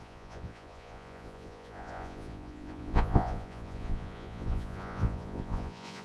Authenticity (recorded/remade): remade